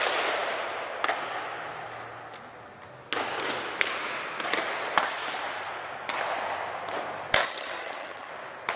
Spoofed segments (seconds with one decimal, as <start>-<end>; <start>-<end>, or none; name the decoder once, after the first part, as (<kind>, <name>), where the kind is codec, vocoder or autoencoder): 7.4-8.3 (vocoder, HiFi-GAN)